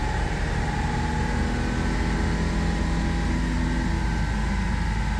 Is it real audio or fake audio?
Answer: real